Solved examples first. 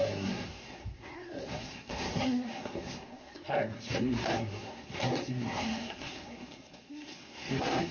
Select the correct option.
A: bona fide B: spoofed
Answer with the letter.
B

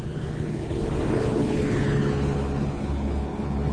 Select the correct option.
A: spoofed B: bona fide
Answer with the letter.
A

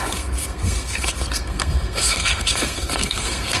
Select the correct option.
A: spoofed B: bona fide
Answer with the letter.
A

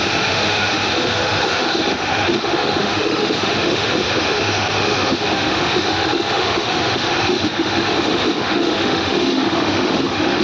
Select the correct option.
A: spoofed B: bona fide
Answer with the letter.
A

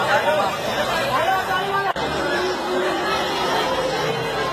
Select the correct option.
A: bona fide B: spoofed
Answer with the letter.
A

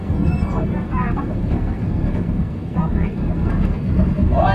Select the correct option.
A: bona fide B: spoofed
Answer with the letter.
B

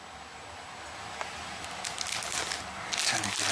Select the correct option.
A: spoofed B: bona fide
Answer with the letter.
B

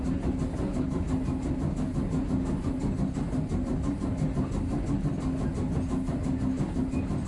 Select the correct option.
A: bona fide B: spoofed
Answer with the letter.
A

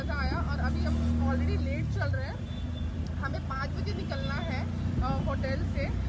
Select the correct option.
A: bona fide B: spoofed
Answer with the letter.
A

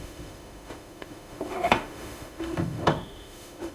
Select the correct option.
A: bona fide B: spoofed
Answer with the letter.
B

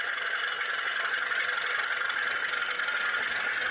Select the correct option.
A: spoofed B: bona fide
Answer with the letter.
B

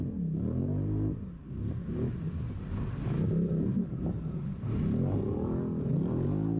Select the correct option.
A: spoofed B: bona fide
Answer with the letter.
B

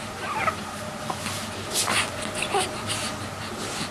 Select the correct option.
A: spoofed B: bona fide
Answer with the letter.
B